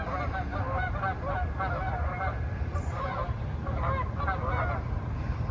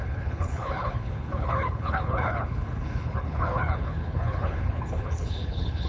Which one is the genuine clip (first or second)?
first